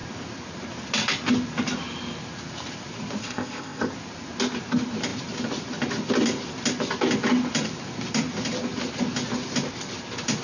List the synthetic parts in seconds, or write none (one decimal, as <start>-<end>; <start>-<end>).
3.2-3.9